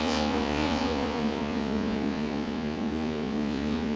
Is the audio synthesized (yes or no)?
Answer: yes